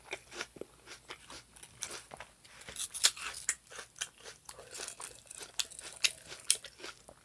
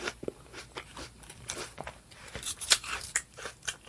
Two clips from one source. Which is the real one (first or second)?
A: first